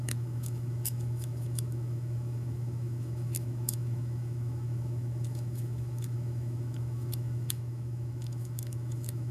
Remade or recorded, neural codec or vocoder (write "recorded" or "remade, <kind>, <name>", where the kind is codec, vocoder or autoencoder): remade, autoencoder, DAC-VAE